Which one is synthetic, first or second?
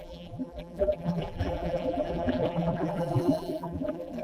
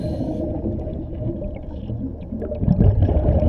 first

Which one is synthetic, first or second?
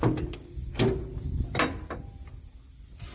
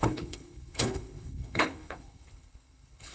second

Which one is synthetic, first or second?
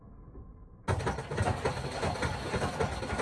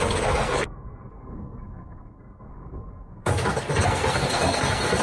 second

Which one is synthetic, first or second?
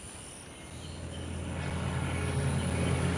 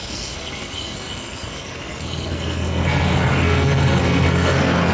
second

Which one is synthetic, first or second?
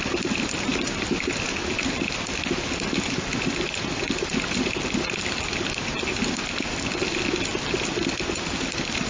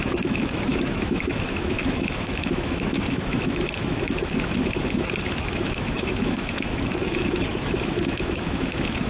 second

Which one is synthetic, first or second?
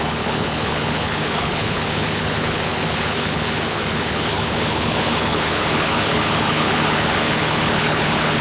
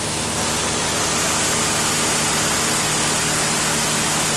first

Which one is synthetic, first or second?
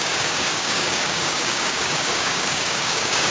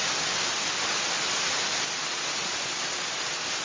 first